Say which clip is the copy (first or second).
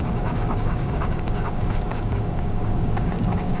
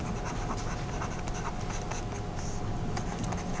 first